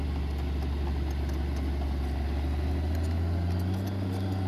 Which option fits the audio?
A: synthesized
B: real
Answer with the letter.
B